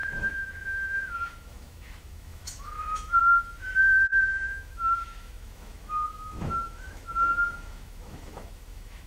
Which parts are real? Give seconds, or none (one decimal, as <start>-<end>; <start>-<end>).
none